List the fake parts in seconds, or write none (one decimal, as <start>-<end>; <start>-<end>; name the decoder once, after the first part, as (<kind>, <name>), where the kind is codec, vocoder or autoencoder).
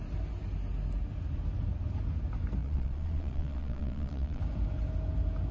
2.6-4.4 (vocoder, Vocos)